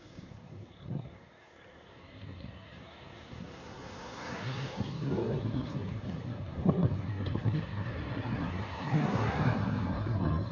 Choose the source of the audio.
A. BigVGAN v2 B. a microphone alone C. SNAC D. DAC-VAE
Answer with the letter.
C